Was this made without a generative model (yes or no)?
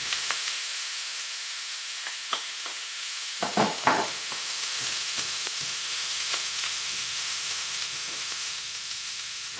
no